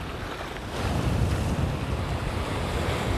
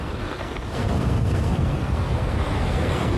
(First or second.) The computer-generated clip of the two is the second